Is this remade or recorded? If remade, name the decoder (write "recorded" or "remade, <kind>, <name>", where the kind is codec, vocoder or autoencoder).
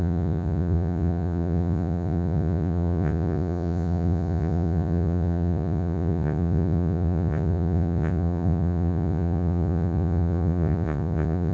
remade, vocoder, Vocos